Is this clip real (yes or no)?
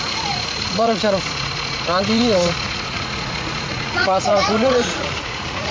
no